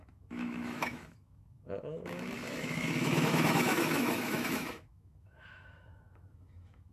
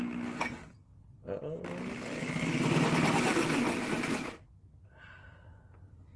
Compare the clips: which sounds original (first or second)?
second